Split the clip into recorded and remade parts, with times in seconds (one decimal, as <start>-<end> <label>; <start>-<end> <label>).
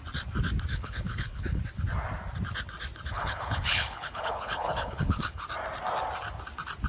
0.0-0.7 recorded; 0.7-1.6 remade; 1.6-3.1 recorded; 3.1-5.4 remade; 5.4-6.9 recorded